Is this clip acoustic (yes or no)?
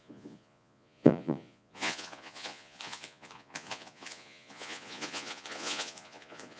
no